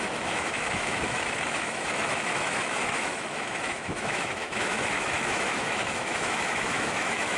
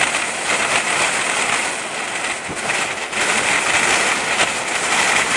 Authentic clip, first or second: second